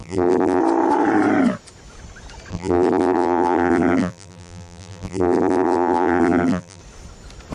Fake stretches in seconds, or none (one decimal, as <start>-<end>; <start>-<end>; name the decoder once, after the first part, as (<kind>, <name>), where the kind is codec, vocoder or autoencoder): 0.0-0.6 (vocoder, BigVGAN v2); 2.5-6.8